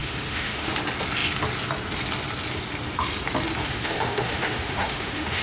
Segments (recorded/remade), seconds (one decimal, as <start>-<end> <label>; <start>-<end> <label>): 0.0-0.7 remade; 0.7-3.6 recorded; 3.6-5.4 remade